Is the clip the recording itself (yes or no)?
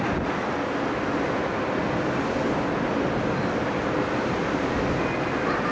yes